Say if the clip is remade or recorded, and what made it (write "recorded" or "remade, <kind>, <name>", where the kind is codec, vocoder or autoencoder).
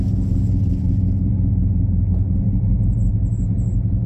remade, vocoder, Vocos